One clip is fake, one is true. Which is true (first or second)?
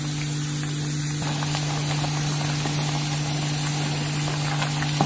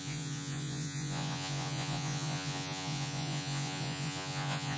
first